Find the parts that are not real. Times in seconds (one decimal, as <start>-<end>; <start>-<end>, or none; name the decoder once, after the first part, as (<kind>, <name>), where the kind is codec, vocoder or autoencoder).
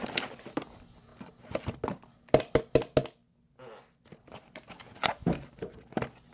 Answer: none